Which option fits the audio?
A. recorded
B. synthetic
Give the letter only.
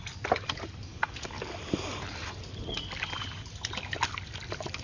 A